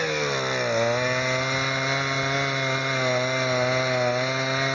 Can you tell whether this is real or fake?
real